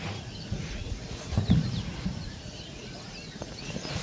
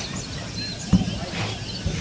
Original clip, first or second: second